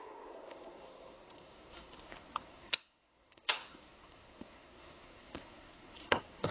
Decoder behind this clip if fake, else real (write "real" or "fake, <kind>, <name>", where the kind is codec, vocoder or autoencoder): fake, codec, SNAC